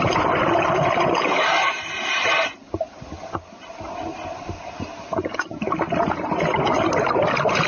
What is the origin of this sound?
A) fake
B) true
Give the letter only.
B